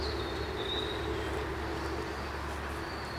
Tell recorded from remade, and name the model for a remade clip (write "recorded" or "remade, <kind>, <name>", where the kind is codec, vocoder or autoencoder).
recorded